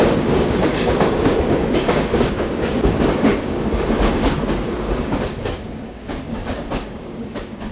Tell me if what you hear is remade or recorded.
remade